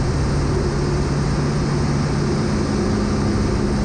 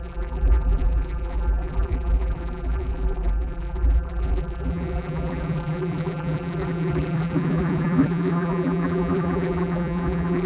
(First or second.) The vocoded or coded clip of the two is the second